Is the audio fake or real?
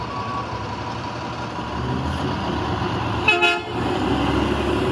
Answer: real